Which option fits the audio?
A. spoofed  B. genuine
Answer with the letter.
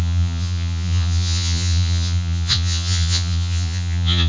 A